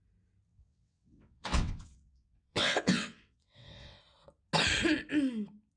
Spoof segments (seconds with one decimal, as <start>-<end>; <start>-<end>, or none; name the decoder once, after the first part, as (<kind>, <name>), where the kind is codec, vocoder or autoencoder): 0.5-4.0 (vocoder, WaveNeXt)